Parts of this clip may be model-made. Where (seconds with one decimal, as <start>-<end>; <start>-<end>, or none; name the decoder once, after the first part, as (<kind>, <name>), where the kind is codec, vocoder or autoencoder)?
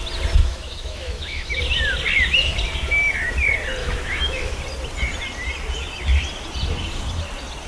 0.4-1.6 (autoencoder, DAC-VAE); 3.8-4.6